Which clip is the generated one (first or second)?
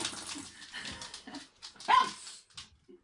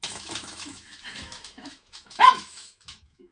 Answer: second